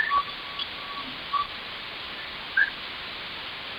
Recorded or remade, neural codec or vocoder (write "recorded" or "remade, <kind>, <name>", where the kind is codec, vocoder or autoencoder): recorded